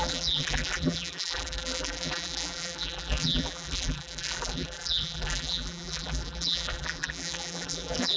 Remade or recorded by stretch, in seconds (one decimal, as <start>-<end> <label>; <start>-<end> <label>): 0.0-8.2 remade